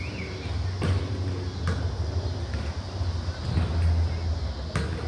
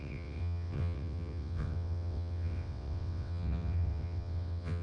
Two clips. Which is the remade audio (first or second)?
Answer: second